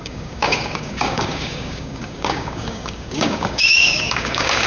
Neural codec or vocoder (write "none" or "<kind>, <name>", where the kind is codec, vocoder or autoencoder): codec, DAC